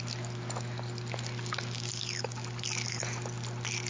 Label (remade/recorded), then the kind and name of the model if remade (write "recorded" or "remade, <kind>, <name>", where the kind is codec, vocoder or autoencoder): recorded